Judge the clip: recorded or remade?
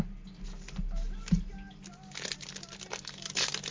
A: recorded